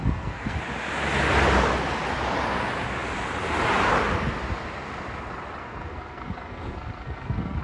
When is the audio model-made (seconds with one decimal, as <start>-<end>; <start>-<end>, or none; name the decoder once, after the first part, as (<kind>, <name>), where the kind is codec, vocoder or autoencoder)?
0.0-0.6 (codec, SNAC); 5.6-7.6

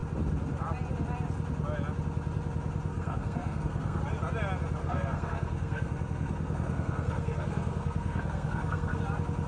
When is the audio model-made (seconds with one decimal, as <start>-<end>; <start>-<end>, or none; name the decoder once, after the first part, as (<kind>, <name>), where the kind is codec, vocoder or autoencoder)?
2.9-4.0 (codec, SNAC); 4.8-9.0